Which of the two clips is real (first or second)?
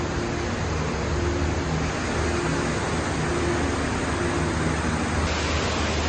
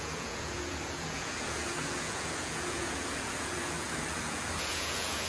first